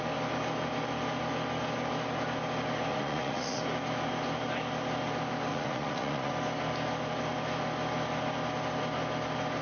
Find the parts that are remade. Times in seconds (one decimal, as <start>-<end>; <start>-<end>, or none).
2.9-3.6; 5.5-6.3